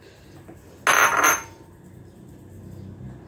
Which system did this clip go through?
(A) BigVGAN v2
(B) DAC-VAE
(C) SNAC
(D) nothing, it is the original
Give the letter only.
D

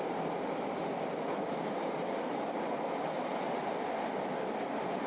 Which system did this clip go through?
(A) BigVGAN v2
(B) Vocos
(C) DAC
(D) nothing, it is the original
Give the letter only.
A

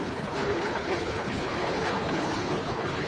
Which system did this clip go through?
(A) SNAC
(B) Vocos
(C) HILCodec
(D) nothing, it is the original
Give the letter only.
C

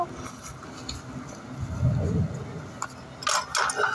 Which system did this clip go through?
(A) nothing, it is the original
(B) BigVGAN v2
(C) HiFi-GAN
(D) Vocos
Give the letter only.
A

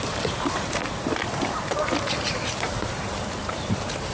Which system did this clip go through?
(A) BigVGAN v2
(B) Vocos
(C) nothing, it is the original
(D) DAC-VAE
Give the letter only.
A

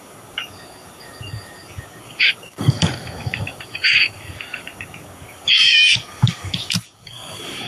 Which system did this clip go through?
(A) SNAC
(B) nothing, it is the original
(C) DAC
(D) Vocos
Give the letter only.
C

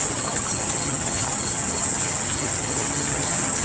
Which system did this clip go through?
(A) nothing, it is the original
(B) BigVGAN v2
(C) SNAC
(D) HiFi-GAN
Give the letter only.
D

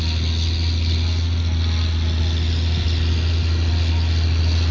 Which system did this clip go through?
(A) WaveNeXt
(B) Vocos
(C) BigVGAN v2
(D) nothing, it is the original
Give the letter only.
D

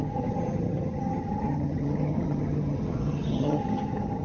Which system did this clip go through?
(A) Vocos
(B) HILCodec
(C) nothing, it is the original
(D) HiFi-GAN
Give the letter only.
D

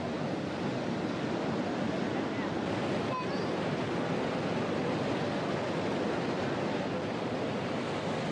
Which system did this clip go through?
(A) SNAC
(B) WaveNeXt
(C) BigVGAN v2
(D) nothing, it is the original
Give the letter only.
D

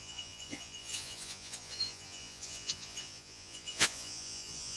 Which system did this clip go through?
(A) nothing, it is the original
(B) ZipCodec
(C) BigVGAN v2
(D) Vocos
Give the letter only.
D